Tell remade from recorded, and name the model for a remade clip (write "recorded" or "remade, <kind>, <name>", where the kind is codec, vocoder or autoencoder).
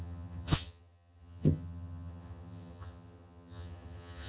remade, vocoder, HiFi-GAN